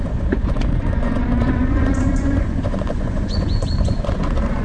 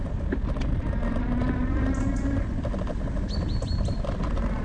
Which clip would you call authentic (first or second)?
second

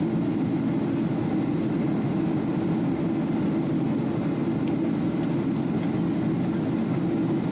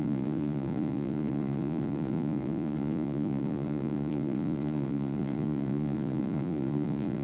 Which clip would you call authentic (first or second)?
first